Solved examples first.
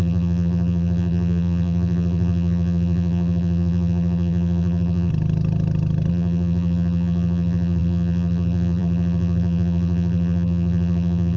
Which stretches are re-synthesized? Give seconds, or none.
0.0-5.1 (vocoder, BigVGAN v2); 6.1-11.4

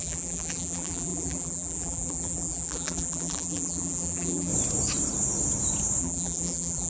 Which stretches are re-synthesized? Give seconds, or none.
0.0-4.5 (vocoder, BigVGAN v2); 6.0-6.9

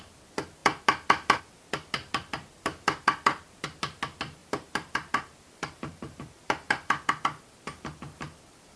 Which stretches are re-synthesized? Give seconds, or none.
4.4-7.1 (vocoder, BigVGAN v2)

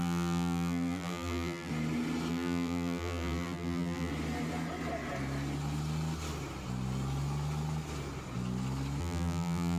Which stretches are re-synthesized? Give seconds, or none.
0.0-1.7 (vocoder, BigVGAN v2); 2.3-4.1; 9.0-9.8